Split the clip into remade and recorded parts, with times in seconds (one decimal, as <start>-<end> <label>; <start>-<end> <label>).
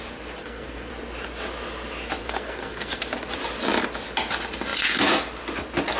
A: 0.0-0.4 recorded; 0.4-0.9 remade; 0.9-2.2 recorded; 2.2-3.0 remade; 3.0-6.0 recorded